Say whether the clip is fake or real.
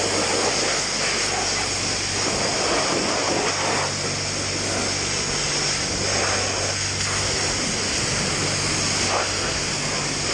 real